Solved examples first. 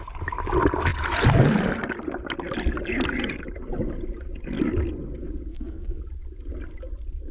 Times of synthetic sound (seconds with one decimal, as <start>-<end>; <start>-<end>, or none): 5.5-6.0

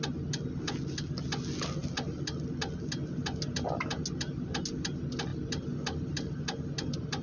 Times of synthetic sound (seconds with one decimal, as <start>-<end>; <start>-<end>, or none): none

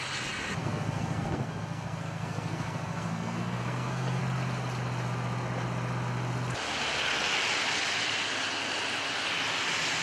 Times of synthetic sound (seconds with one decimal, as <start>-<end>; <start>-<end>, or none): 0.6-4.2